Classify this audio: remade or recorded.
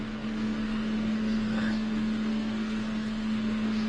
remade